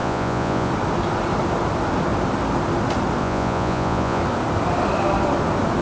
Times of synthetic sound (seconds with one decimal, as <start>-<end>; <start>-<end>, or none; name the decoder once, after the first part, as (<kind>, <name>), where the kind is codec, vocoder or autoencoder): 0.0-0.7 (vocoder, Vocos); 3.2-4.2